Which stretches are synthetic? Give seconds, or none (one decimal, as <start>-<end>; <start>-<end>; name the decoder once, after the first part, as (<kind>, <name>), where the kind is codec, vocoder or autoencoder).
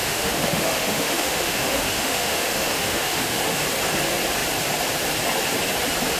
0.0-3.4 (autoencoder, DAC-VAE)